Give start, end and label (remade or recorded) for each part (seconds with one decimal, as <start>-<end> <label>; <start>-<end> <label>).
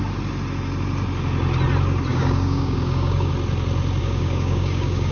0.0-2.1 recorded; 2.1-3.3 remade; 3.3-4.0 recorded; 4.0-5.1 remade